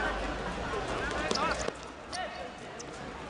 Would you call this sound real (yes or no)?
yes